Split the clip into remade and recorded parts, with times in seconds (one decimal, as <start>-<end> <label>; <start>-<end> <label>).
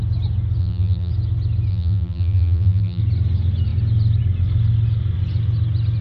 0.0-0.6 recorded; 0.6-1.1 remade; 1.1-1.7 recorded; 1.7-3.0 remade; 3.0-6.0 recorded